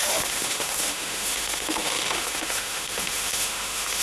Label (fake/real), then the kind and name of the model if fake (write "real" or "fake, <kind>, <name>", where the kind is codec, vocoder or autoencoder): fake, autoencoder, DAC-VAE